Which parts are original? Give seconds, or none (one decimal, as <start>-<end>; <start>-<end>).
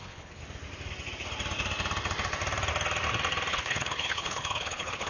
0.4-3.5